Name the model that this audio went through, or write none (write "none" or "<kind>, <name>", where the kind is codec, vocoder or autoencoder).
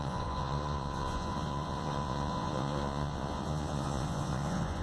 vocoder, Vocos